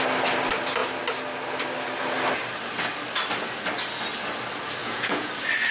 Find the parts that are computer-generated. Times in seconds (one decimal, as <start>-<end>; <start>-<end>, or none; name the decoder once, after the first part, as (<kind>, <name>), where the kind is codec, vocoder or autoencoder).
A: 4.8-5.3 (vocoder, Vocos)